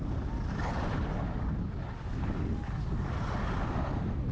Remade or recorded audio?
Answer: recorded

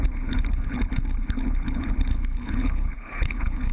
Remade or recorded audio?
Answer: remade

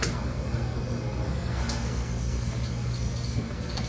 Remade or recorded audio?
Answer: remade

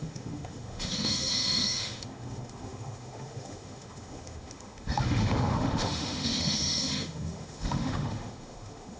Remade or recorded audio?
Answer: remade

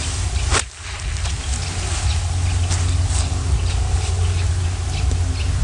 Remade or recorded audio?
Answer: recorded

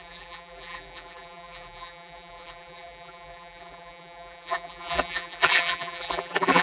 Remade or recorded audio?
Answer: remade